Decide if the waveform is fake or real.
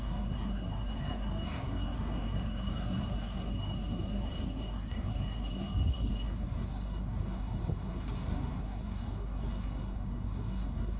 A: fake